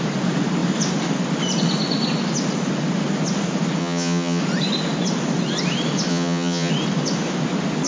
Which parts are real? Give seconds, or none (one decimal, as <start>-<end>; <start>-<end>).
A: 0.0-3.8; 4.4-6.1; 6.7-7.9